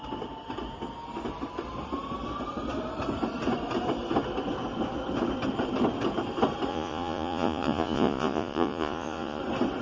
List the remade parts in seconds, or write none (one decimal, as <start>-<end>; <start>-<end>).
6.7-9.4